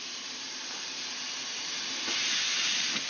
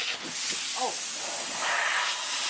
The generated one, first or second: first